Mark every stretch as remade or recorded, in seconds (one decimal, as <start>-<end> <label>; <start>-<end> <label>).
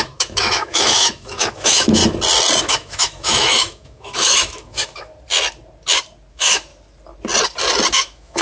0.0-2.0 remade; 2.0-2.6 recorded; 2.6-5.1 remade; 5.1-6.3 recorded; 6.3-6.7 remade; 6.7-7.9 recorded; 7.9-8.4 remade